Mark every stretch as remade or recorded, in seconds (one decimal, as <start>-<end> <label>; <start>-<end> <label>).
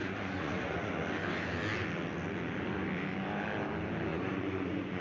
0.0-0.9 remade; 0.9-4.1 recorded; 4.1-5.0 remade